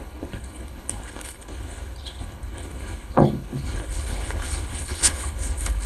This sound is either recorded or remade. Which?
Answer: remade